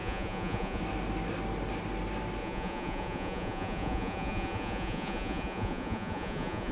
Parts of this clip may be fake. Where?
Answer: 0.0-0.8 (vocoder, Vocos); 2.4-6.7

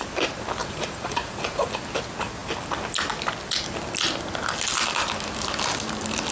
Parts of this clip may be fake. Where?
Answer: 0.6-1.7 (vocoder, Vocos)

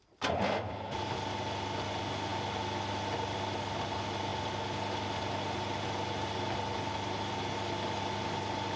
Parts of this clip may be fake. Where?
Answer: none

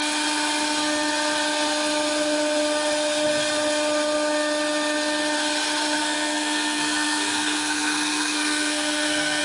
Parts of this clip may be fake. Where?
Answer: 6.0-9.4 (codec, SNAC)